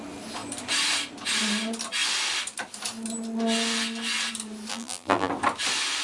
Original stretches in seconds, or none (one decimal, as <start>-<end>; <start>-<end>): 0.0-4.7; 5.3-6.0